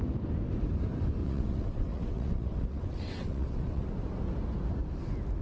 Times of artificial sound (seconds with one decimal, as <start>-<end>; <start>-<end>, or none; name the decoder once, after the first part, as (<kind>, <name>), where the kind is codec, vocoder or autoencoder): 1.2-3.9 (vocoder, WaveNeXt)